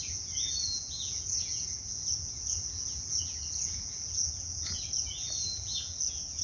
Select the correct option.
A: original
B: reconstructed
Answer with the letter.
B